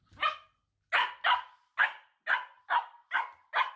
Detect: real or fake real